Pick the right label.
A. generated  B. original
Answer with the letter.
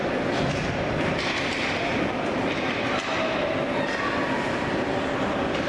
B